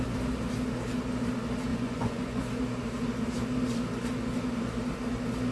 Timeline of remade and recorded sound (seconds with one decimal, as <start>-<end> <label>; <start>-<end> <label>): 0.0-1.7 recorded; 1.7-2.4 remade; 2.4-5.5 recorded